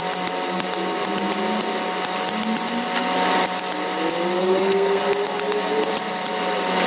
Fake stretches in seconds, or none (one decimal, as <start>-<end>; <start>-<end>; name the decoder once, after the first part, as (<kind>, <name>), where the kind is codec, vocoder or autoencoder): 4.4-5.0 (codec, SNAC)